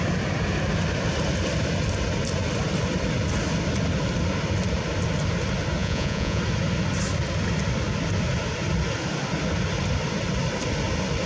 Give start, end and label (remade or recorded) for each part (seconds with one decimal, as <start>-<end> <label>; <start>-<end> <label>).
0.0-5.8 recorded; 5.8-6.4 remade; 6.4-11.3 recorded